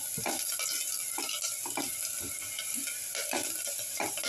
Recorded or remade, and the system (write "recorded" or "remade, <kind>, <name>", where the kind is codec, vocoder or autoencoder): recorded